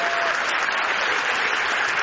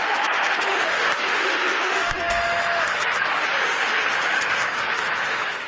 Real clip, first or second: first